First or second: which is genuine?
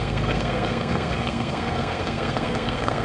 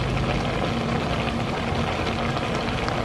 second